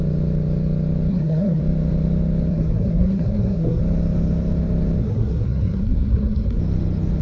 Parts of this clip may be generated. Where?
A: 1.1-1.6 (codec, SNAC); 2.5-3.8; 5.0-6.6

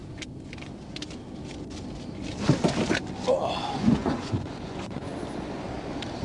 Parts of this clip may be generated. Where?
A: 3.7-5.1 (vocoder, Vocos)

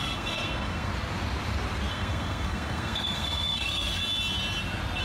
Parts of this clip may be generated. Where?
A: 0.0-0.9 (codec, SNAC); 1.9-4.0

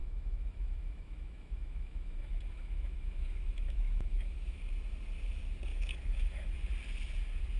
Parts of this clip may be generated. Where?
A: 0.0-4.6 (autoencoder, DAC-VAE); 5.7-6.6